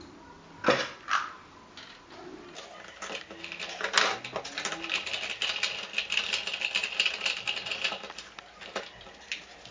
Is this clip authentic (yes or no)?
yes